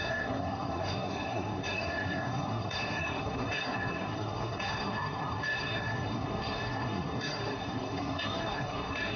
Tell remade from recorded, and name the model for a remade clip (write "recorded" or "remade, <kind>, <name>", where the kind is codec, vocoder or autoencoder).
remade, codec, SNAC